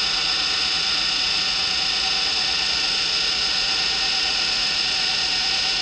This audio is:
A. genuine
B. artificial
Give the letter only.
B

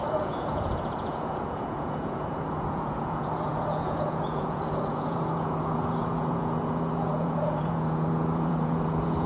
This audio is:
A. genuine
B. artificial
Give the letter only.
B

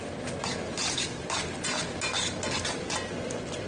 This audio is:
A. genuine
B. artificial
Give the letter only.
A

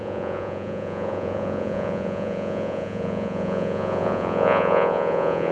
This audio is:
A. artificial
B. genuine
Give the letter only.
A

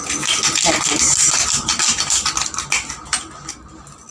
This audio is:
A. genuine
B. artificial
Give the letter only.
A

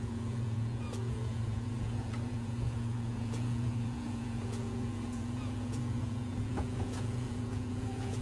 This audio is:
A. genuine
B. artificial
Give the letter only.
B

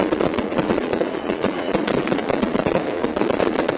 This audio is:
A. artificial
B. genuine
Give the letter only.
A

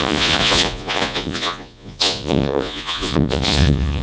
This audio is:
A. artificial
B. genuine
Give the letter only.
A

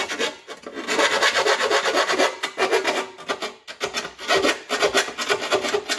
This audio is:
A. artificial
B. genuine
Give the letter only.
B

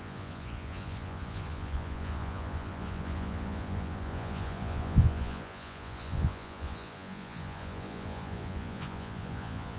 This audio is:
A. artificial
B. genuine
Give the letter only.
A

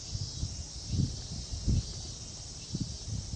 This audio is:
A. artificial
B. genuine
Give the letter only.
B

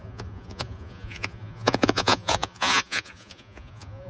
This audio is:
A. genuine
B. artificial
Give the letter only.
B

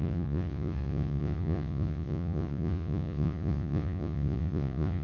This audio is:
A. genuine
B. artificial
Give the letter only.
B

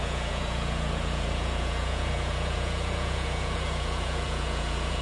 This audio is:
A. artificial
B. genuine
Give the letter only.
A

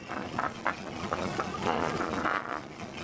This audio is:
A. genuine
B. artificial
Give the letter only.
B